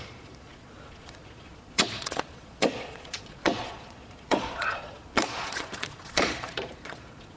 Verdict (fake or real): fake